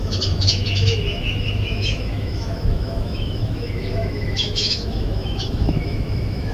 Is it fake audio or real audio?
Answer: fake